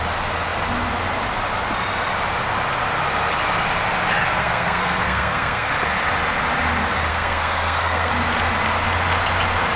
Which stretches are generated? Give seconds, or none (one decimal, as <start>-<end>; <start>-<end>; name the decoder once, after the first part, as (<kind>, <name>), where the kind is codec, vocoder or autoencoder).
4.4-5.7 (codec, SNAC); 7.1-8.1